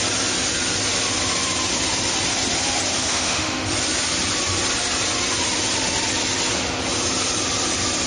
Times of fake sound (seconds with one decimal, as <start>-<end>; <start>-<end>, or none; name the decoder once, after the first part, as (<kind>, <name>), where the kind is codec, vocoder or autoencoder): 3.0-3.7 (autoencoder, DAC-VAE)